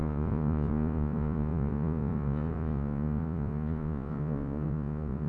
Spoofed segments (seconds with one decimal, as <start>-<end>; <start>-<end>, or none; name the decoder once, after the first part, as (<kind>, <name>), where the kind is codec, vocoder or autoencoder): 0.0-5.3 (vocoder, Vocos)